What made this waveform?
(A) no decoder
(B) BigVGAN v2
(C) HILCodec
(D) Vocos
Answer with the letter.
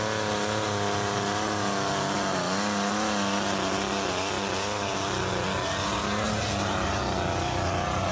A